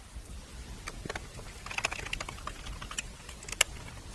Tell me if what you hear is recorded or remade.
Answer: recorded